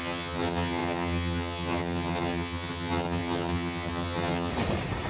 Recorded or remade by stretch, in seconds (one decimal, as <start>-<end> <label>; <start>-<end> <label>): 0.0-4.5 remade; 4.5-5.1 recorded